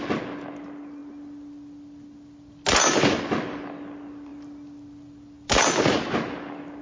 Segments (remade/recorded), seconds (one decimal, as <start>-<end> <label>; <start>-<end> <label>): 0.0-6.8 recorded